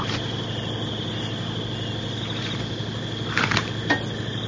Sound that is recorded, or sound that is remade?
recorded